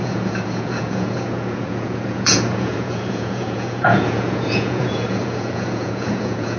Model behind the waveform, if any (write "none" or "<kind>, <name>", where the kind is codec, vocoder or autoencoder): vocoder, Vocos